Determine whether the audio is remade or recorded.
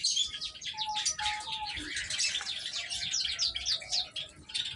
recorded